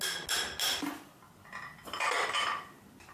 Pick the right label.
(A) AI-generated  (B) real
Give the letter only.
B